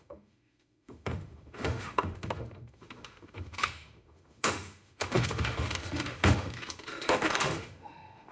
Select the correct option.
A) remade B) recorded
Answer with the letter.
A